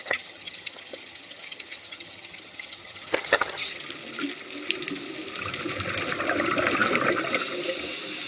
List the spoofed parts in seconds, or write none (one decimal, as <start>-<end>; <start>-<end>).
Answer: 0.0-3.8